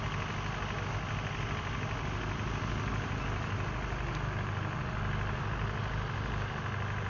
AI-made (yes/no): no